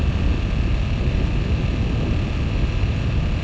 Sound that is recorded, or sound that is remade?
recorded